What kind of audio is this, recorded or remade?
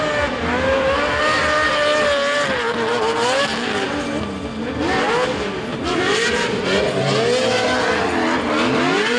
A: recorded